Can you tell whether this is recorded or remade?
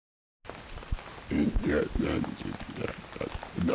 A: recorded